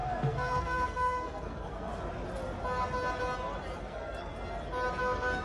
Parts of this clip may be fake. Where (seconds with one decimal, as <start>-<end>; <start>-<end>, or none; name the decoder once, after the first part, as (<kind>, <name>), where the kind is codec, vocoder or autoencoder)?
0.0-1.9 (codec, SNAC); 3.8-4.3; 5.0-5.4